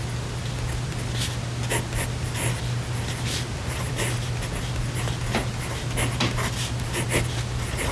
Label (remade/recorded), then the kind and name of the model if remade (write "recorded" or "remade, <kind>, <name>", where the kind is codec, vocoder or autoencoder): recorded